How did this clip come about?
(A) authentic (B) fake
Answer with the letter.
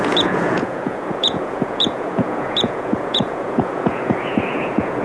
B